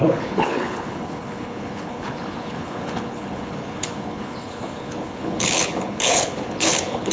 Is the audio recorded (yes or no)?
no